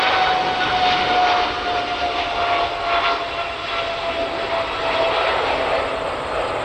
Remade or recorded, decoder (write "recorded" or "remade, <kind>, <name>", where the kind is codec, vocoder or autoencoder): recorded